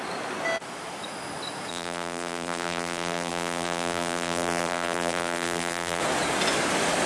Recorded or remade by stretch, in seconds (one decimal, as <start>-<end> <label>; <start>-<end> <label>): 0.0-1.7 recorded; 1.7-6.0 remade; 6.0-7.1 recorded